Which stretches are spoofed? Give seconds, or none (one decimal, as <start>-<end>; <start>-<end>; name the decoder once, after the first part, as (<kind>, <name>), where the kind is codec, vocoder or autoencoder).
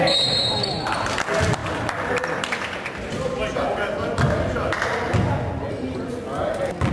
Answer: none